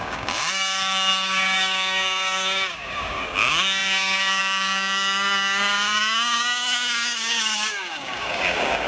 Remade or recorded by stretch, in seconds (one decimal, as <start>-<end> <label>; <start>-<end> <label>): 0.0-8.9 remade